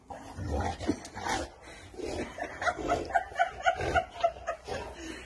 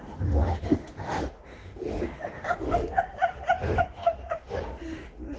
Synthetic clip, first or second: second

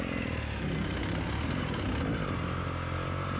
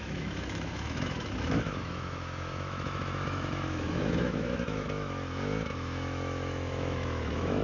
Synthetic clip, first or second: second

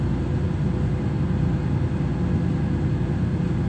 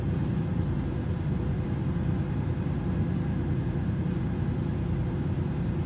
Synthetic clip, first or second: second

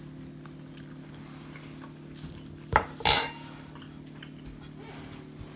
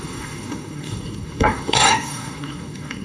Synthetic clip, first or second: second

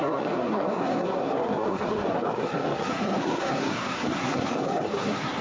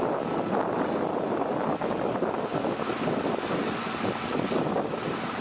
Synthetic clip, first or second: first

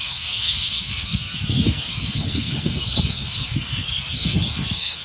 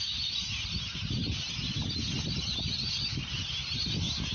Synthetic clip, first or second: first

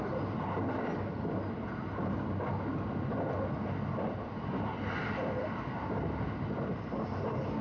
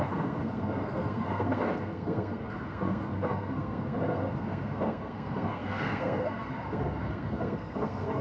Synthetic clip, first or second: second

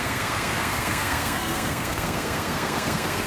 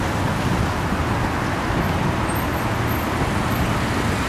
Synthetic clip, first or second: first